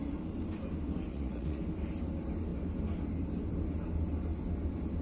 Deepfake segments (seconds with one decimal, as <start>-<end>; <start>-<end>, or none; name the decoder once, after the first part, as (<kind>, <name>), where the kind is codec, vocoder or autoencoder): 1.1-1.6 (vocoder, Vocos)